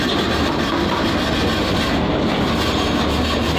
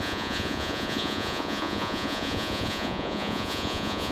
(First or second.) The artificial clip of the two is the second